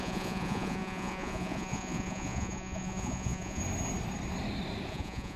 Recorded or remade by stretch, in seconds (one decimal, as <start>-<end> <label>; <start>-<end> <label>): 0.0-3.6 remade; 3.6-4.9 recorded; 4.9-5.4 remade